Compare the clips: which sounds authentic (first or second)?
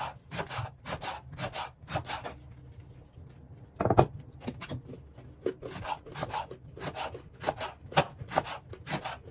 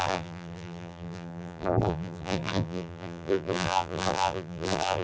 first